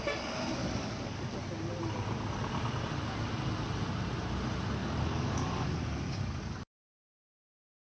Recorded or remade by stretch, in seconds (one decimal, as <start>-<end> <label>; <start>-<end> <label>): 0.0-0.6 recorded; 0.6-1.4 remade; 1.4-4.8 recorded; 4.8-5.8 remade; 5.8-7.9 recorded